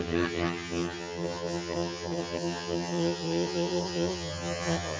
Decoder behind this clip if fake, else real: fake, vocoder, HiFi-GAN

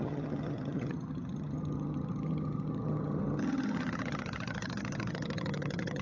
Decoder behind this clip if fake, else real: fake, vocoder, HiFi-GAN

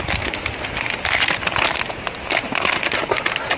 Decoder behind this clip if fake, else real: real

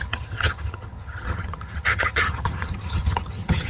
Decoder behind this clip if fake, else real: fake, vocoder, HiFi-GAN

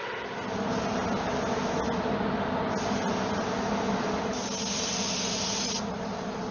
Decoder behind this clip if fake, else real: real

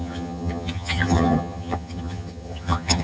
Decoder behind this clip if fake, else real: fake, vocoder, HiFi-GAN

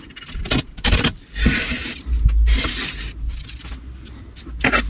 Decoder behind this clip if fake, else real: real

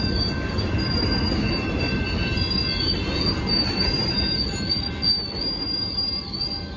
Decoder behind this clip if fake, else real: real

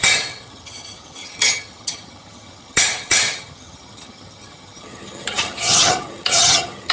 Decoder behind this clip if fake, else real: fake, vocoder, HiFi-GAN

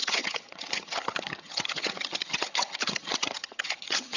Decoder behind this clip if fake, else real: fake, vocoder, HiFi-GAN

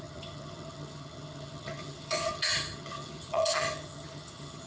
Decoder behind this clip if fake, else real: fake, vocoder, HiFi-GAN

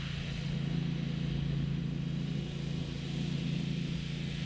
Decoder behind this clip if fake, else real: real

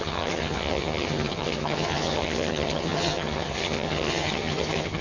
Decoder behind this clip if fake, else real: fake, vocoder, HiFi-GAN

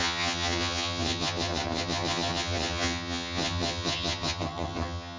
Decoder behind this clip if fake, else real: fake, vocoder, HiFi-GAN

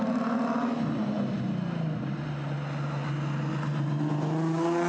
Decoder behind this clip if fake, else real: real